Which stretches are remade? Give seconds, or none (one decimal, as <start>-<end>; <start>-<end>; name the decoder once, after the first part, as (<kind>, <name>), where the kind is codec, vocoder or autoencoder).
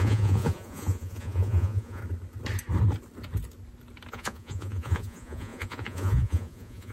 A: 0.0-2.0 (vocoder, Vocos); 4.1-6.9